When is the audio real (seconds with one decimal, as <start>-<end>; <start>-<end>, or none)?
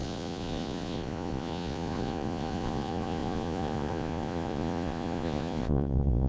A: none